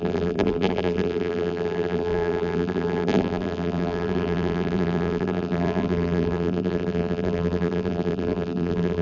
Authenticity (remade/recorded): remade